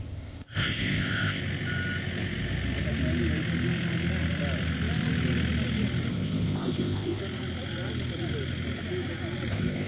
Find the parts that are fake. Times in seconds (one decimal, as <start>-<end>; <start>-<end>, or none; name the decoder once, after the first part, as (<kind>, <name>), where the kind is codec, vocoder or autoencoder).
0.0-1.4 (codec, ZipCodec); 6.1-7.2; 9.5-9.9